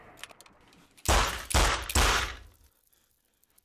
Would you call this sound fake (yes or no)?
no